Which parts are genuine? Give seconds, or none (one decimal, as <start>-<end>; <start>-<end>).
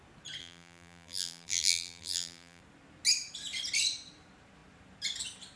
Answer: 0.0-0.4; 2.6-5.6